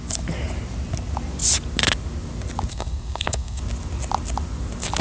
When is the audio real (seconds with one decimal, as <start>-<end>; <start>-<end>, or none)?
0.0-2.7; 3.6-5.0